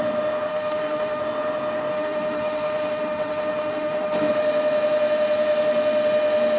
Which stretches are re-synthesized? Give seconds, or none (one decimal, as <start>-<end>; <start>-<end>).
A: 0.5-1.2; 1.9-4.3